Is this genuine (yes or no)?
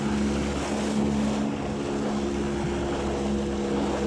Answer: yes